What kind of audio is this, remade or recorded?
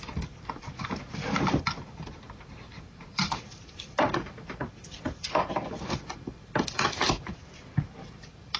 remade